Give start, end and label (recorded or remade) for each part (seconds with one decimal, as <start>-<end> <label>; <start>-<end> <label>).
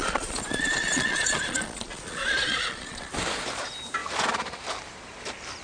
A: 0.0-3.1 remade; 3.1-5.6 recorded